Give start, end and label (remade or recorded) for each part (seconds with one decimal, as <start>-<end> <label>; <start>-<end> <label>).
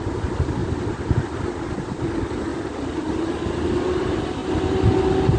0.0-5.4 recorded